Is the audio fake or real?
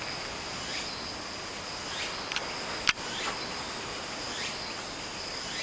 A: real